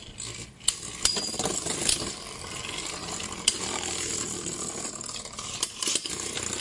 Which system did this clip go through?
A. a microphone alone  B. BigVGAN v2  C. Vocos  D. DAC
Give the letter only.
A